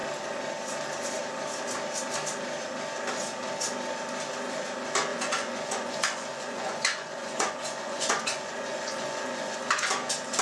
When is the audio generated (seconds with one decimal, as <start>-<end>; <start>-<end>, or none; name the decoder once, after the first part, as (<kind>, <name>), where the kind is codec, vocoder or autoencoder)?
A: 5.1-9.9 (vocoder, Vocos)